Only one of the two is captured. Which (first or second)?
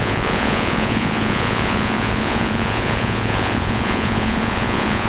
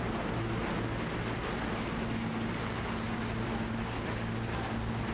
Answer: second